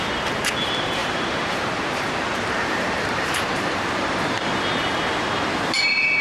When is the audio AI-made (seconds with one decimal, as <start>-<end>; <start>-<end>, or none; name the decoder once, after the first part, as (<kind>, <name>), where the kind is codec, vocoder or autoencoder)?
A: 1.0-4.5 (vocoder, BigVGAN v2)